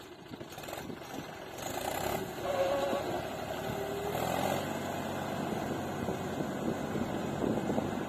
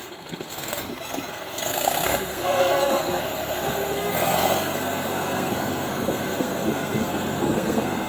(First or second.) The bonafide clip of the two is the first